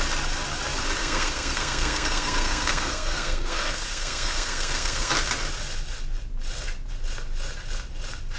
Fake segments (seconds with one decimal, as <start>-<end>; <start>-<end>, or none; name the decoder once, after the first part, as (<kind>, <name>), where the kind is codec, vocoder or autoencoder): 1.0-5.1 (codec, SNAC)